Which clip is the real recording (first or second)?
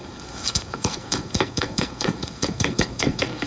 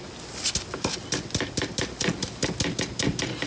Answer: second